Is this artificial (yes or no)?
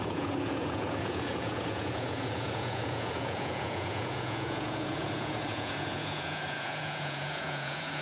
yes